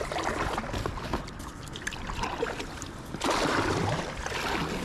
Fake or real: real